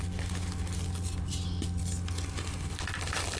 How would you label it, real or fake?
real